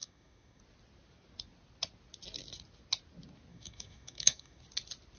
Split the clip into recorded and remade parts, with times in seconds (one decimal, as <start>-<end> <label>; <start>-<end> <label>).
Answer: 0.0-0.6 remade; 0.6-3.5 recorded; 3.5-4.6 remade; 4.6-5.2 recorded